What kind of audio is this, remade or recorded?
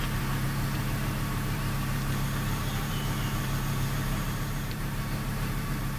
remade